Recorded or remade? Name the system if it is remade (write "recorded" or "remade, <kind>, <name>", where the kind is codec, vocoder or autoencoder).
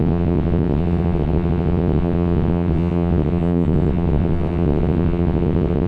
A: remade, vocoder, WaveNeXt